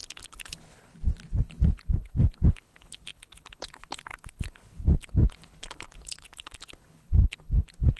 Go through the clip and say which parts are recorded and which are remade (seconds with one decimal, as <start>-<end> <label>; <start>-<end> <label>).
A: 0.0-0.9 remade; 0.9-1.4 recorded; 1.4-8.0 remade